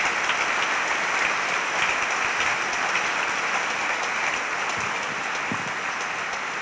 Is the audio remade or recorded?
recorded